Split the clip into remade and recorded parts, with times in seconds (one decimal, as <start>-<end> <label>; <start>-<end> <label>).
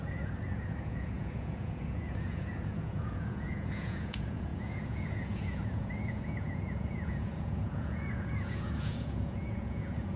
0.0-10.2 remade